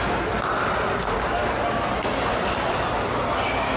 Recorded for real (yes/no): yes